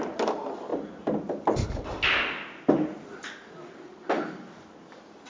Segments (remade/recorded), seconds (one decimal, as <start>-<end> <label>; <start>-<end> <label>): 0.0-5.3 recorded